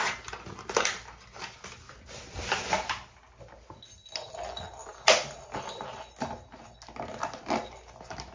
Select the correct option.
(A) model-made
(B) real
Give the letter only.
B